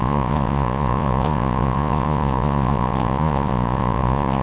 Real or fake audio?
fake